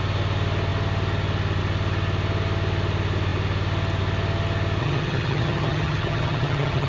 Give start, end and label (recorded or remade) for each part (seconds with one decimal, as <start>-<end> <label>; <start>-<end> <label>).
0.0-4.8 recorded; 4.8-6.9 remade